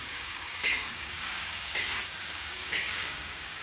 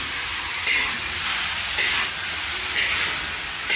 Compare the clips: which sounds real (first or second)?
second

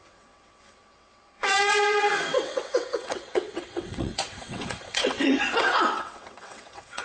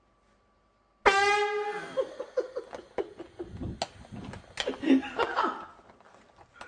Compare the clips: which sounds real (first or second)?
second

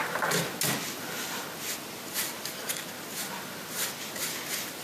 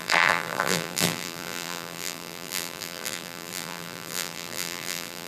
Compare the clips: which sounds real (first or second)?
first